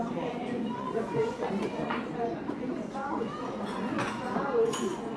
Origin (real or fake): fake